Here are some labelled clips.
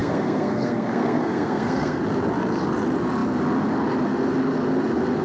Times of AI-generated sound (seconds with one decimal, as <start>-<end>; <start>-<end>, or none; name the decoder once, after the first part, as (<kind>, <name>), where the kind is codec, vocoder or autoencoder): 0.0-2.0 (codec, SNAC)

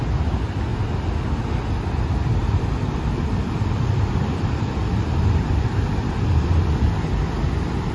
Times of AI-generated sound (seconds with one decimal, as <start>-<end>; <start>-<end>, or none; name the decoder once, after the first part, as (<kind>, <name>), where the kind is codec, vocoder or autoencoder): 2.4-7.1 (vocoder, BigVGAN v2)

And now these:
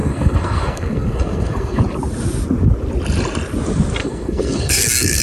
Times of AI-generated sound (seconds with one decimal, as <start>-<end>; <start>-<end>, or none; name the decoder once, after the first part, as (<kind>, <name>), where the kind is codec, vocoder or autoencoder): 0.0-1.8 (codec, SNAC); 4.0-5.2

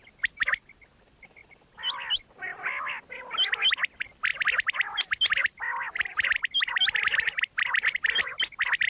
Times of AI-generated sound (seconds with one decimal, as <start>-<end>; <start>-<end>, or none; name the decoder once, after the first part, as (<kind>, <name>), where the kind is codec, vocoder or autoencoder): 1.4-3.1 (vocoder, BigVGAN v2)

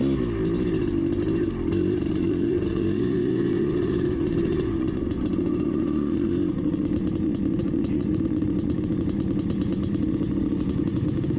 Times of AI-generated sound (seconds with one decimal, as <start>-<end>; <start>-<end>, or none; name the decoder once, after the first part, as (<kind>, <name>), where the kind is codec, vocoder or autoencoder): 2.1-11.4 (vocoder, Vocos)